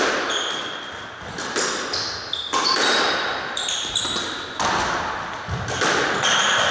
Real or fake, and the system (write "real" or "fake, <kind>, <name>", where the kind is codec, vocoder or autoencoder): real